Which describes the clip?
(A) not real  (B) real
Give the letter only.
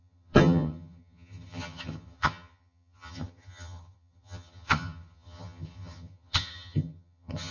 A